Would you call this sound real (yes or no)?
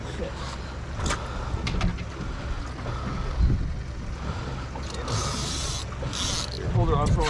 yes